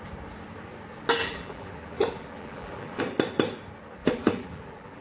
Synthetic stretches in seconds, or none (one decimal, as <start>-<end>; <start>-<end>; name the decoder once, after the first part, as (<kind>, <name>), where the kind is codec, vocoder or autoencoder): 1.2-3.0 (vocoder, BigVGAN v2); 4.0-5.0